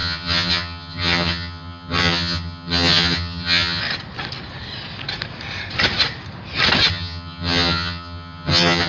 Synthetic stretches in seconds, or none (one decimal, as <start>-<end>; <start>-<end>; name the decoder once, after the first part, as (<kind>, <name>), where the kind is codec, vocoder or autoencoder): 0.0-3.8 (vocoder, HiFi-GAN); 6.9-8.9